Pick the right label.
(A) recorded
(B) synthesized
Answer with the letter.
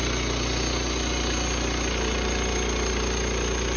A